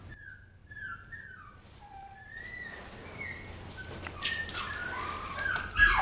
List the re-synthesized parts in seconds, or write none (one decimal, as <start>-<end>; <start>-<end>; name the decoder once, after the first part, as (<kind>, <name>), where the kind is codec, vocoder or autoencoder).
0.6-4.2 (vocoder, BigVGAN v2); 4.8-6.0